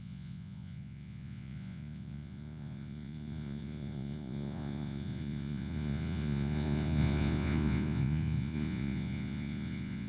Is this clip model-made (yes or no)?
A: yes